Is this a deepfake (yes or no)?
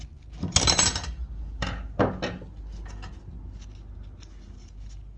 no